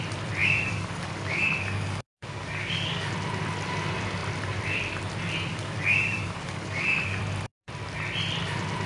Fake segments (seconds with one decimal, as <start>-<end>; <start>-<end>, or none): 0.4-3.1; 5.5-7.2